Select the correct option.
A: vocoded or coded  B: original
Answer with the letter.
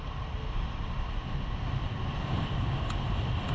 B